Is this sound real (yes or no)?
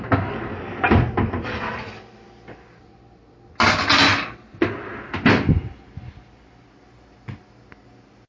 yes